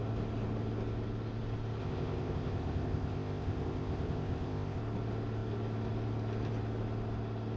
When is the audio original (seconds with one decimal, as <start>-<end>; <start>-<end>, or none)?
0.0-1.8; 4.8-7.6